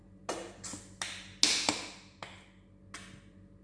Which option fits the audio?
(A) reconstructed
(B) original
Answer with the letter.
B